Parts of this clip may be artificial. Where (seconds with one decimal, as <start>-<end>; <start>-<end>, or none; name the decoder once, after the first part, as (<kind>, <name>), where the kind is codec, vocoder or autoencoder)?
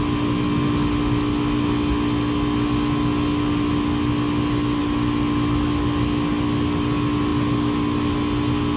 none